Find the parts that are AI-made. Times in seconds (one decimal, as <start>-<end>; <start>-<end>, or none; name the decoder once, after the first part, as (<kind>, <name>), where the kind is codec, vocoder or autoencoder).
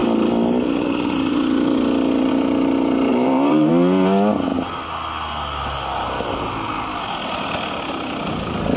3.1-3.7 (vocoder, BigVGAN v2)